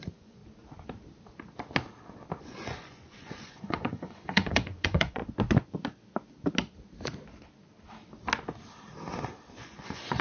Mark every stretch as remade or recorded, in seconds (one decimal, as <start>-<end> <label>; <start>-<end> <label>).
0.0-0.4 remade; 0.4-2.4 recorded; 2.4-5.2 remade; 5.2-9.6 recorded; 9.6-10.2 remade